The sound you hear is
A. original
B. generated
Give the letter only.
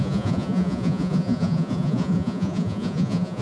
B